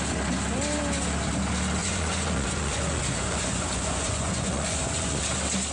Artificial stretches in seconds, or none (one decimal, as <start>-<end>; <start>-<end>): 1.8-5.2

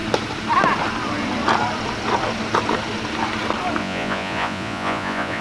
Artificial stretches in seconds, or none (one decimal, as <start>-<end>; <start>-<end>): 3.8-5.4

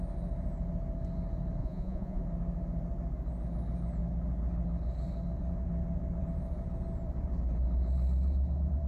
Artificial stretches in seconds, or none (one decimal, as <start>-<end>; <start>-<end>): 1.6-2.2

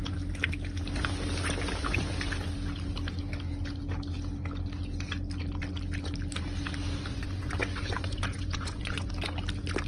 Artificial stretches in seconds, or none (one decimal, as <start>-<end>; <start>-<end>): 7.1-9.1

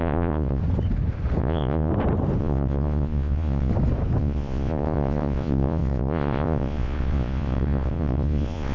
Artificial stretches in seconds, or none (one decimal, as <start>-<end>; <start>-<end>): 0.0-0.6; 1.4-1.9; 2.4-3.7; 4.2-8.7

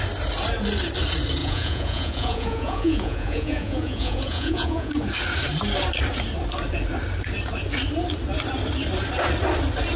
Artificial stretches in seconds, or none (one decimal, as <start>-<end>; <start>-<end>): 1.4-4.9

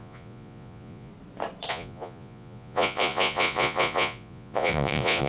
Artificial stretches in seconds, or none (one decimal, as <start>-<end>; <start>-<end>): 0.0-1.1; 1.7-5.3